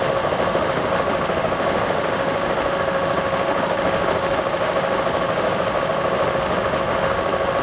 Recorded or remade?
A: remade